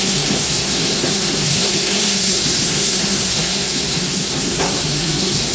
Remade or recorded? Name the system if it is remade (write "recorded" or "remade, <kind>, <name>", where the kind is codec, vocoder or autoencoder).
remade, codec, SNAC